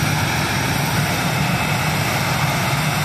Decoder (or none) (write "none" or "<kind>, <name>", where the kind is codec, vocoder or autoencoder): none